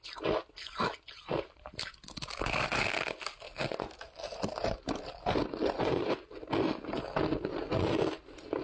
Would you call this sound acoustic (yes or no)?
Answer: yes